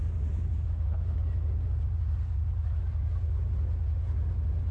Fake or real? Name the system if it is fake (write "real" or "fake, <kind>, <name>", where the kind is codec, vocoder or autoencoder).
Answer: real